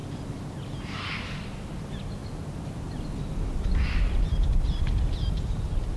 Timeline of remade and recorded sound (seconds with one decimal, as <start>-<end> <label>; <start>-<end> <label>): 0.0-1.2 remade; 1.2-2.2 recorded; 2.2-6.0 remade